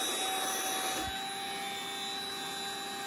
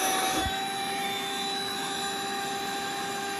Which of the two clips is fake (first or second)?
second